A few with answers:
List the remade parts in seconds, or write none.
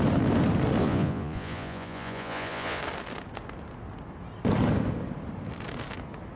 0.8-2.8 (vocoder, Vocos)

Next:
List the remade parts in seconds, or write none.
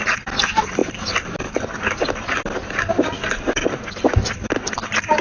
none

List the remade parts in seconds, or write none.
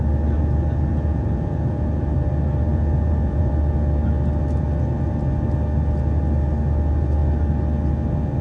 0.9-2.0 (vocoder, Vocos); 2.7-3.5